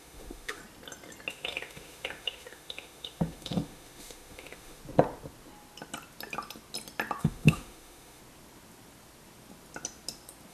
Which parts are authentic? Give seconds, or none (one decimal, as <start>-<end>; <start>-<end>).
0.6-1.3; 4.8-7.2; 8.2-10.5